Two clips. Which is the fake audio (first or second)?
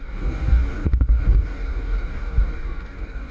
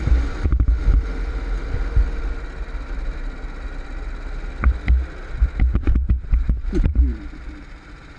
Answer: first